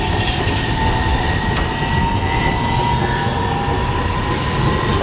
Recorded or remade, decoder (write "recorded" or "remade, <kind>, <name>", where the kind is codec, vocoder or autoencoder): recorded